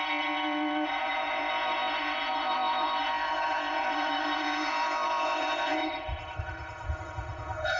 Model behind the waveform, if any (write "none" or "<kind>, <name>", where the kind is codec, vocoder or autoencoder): codec, ZipCodec